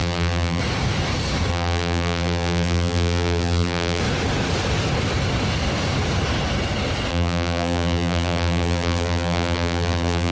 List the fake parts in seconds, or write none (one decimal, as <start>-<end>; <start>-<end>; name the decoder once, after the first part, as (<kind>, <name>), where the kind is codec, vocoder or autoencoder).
0.0-0.6 (vocoder, BigVGAN v2); 1.5-4.0; 7.1-10.3